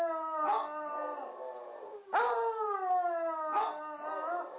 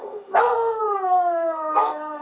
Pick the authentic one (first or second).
first